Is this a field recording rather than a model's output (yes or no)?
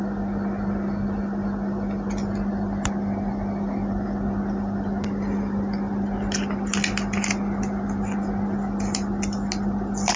yes